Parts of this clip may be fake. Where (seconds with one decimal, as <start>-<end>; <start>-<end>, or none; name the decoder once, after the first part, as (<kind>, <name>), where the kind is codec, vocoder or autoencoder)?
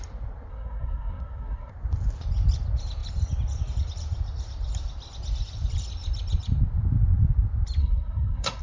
0.5-1.7 (codec, SNAC); 7.8-8.6